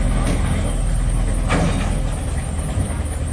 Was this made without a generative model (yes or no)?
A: yes